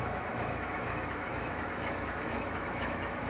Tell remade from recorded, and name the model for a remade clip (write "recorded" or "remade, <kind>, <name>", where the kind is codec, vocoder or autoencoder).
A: remade, autoencoder, DAC-VAE